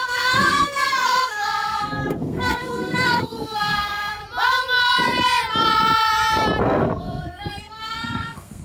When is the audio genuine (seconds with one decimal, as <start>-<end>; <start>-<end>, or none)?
4.2-6.6